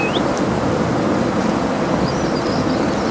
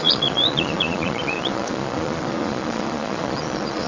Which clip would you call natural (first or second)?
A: first